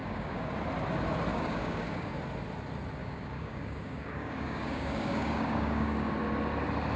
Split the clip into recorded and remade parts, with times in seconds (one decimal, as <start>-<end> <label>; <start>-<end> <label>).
0.0-0.5 remade; 0.5-1.3 recorded; 1.3-2.2 remade; 2.2-3.0 recorded; 3.0-6.1 remade; 6.1-7.0 recorded